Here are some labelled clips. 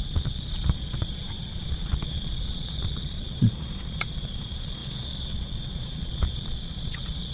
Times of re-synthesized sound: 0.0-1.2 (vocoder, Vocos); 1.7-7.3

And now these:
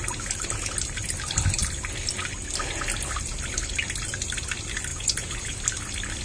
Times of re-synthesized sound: 4.9-5.5 (vocoder, Vocos)

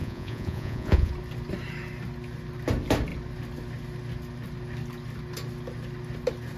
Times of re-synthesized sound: 0.0-1.1 (vocoder, Vocos)

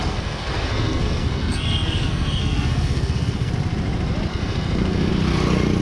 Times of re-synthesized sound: 0.0-3.5 (codec, SNAC); 4.3-5.1

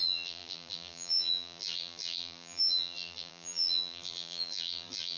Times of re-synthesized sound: 0.0-5.2 (vocoder, BigVGAN v2)

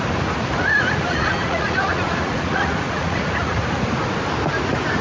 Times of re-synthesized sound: 0.6-3.6 (vocoder, Vocos)

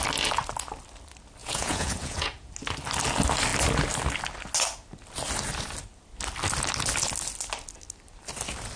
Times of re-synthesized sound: 1.4-2.5 (vocoder, Vocos)

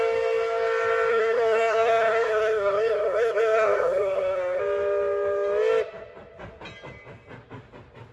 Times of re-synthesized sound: 1.1-4.6 (codec, SNAC)